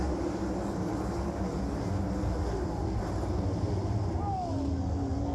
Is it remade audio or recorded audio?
recorded